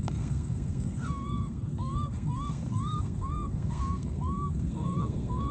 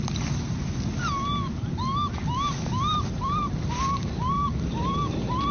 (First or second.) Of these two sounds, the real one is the second